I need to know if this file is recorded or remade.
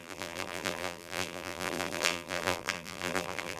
remade